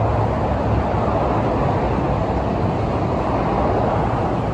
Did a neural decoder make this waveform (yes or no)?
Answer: no